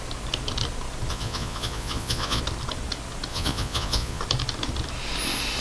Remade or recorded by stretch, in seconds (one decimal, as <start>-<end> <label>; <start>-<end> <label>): 0.0-1.1 recorded; 1.1-2.4 remade; 2.4-3.3 recorded; 3.3-4.2 remade; 4.2-5.6 recorded